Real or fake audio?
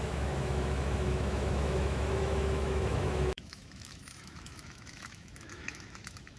fake